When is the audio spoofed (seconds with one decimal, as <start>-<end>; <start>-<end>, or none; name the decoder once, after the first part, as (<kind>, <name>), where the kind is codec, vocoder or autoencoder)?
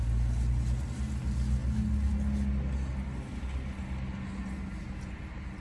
none